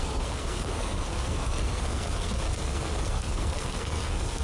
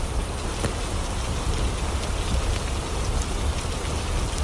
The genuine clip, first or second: second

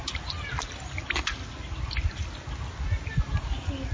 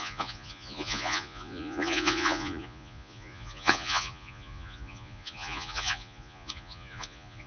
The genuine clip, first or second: first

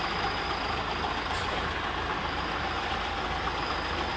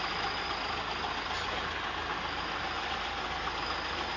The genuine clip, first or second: second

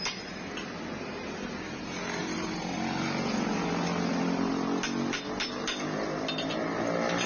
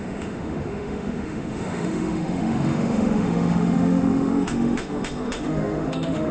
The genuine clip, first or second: first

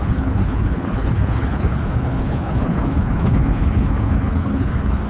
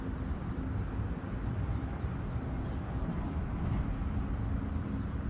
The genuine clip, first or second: second